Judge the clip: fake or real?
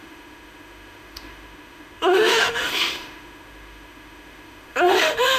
fake